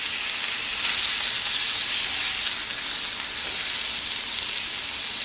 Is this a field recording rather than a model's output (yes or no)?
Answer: yes